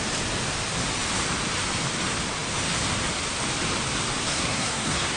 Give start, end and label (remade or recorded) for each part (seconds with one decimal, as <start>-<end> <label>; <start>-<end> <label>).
0.0-4.2 recorded; 4.2-5.2 remade